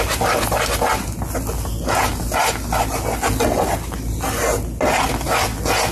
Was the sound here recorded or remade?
recorded